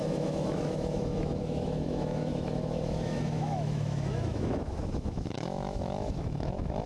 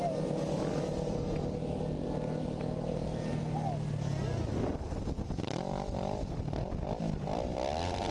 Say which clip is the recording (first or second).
second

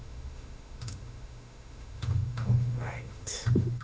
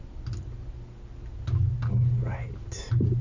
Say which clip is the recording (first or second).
second